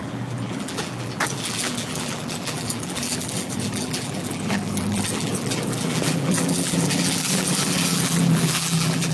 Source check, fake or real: fake